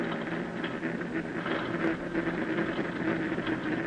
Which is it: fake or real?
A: real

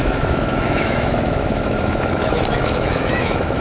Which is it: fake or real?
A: fake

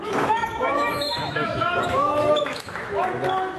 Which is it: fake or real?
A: fake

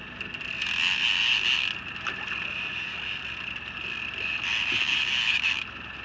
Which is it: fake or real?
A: real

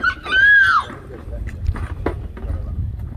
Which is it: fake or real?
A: real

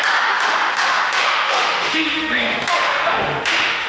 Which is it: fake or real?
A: fake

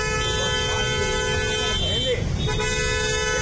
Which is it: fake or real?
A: real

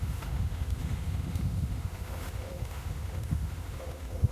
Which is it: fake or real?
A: fake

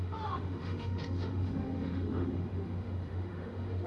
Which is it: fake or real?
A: fake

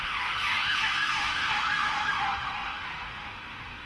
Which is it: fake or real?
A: fake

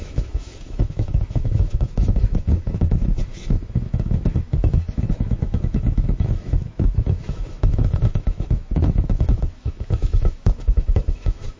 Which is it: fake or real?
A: fake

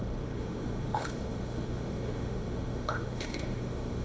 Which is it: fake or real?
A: fake